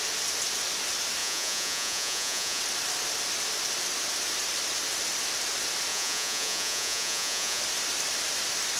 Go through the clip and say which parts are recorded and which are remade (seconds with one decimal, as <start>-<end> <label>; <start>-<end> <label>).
0.0-1.2 recorded; 1.2-2.6 remade; 2.6-5.9 recorded; 5.9-7.6 remade; 7.6-8.8 recorded

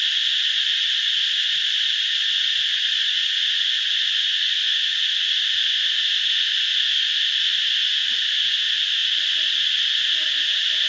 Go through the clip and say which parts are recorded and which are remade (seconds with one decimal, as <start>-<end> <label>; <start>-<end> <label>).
0.0-2.7 recorded; 2.7-5.3 remade; 5.3-9.0 recorded; 9.0-9.8 remade; 9.8-10.9 recorded

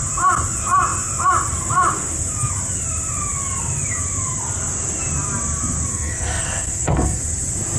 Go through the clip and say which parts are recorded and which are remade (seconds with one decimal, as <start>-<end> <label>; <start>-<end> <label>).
0.0-5.9 recorded; 5.9-7.2 remade; 7.2-7.8 recorded

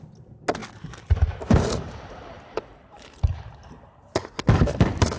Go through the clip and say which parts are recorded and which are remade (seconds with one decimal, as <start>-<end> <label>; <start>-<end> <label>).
0.0-0.6 recorded; 0.6-3.7 remade; 3.7-5.2 recorded

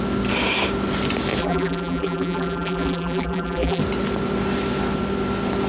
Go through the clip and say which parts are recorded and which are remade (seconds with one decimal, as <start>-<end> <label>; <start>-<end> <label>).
0.0-1.4 recorded; 1.4-3.8 remade; 3.8-5.7 recorded

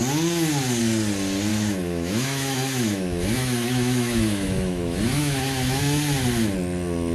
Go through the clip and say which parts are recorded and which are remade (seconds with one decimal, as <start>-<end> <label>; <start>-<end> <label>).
0.0-1.5 recorded; 1.5-5.8 remade; 5.8-7.1 recorded

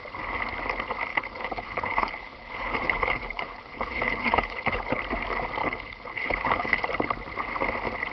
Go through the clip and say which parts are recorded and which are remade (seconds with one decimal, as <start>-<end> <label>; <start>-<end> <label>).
0.0-1.1 recorded; 1.1-5.0 remade; 5.0-5.6 recorded; 5.6-6.8 remade; 6.8-8.1 recorded